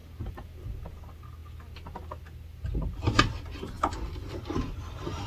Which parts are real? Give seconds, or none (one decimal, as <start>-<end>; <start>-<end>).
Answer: 0.0-5.3